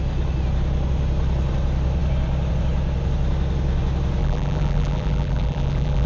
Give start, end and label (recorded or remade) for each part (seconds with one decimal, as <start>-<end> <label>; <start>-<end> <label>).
0.0-4.2 recorded; 4.2-6.1 remade